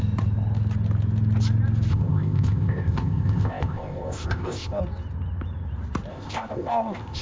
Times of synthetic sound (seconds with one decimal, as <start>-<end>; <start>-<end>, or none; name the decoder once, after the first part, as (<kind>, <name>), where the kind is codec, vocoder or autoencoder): 1.9-4.8 (codec, ZipCodec); 6.1-7.2